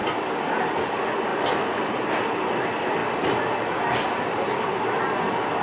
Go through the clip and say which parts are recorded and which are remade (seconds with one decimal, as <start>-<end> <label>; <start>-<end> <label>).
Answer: 0.0-0.9 remade; 0.9-1.3 recorded; 1.3-2.1 remade; 2.1-5.6 recorded